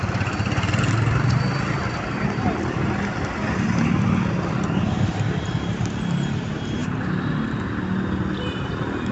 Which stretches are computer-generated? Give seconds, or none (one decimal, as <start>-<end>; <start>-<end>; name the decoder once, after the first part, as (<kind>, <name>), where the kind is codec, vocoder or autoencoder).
none